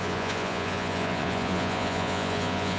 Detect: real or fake fake